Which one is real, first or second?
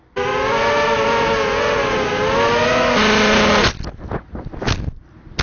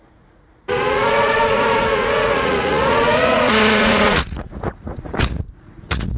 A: first